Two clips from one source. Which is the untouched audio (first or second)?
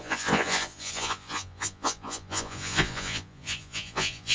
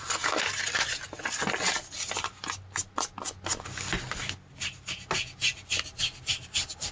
second